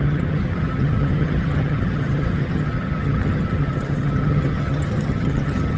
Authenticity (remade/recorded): remade